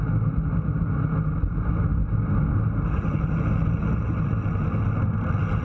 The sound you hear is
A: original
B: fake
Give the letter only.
A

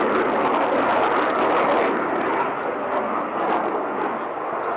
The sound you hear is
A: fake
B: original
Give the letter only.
B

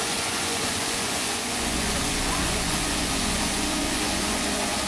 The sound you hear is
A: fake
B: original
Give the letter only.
A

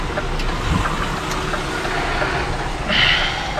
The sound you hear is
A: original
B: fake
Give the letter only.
A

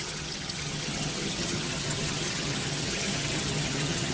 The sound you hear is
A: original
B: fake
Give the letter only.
B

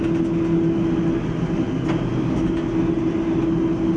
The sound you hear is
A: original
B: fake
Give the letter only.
A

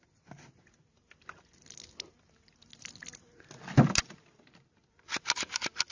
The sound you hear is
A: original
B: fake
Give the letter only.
A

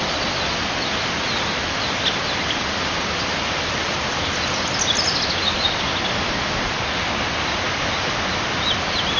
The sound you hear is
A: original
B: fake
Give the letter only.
A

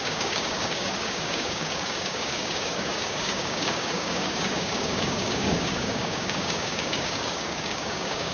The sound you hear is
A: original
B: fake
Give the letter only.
B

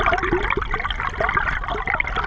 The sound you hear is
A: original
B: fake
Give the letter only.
A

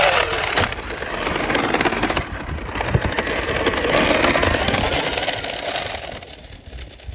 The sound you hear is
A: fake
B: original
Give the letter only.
B